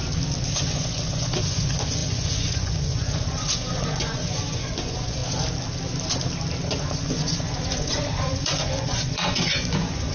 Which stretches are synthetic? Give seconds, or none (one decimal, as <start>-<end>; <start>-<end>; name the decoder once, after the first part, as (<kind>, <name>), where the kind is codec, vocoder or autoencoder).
0.6-5.2 (vocoder, Vocos); 6.8-10.1